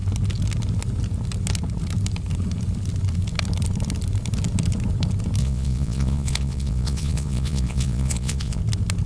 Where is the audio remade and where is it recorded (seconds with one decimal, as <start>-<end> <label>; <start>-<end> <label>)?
0.0-5.4 recorded; 5.4-8.6 remade; 8.6-9.1 recorded